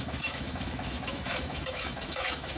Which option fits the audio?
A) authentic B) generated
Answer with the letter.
B